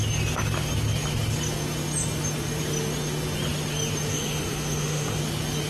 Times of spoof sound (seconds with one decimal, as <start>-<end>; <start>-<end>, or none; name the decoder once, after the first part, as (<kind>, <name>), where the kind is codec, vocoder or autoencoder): 4.1-5.2 (autoencoder, DAC-VAE)